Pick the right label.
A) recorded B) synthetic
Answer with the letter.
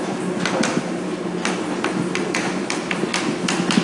A